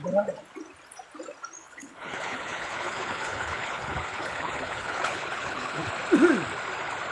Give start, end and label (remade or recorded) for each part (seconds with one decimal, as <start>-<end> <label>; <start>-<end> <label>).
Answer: 0.0-1.6 recorded; 1.6-5.9 remade; 5.9-7.1 recorded